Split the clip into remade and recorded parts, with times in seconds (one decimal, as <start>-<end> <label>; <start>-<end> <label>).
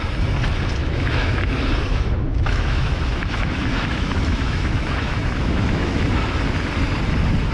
0.0-0.8 recorded; 0.8-1.5 remade; 1.5-1.9 recorded; 1.9-6.2 remade; 6.2-7.5 recorded